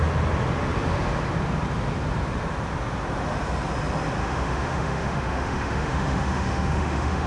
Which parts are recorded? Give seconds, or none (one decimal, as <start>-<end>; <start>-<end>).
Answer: 0.0-4.2